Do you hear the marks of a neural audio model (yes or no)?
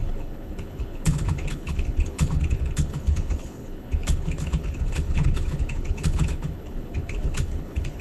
yes